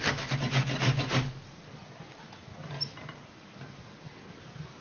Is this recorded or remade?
recorded